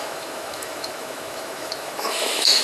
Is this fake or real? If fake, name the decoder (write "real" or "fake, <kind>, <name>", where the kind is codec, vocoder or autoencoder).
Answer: fake, autoencoder, DAC-VAE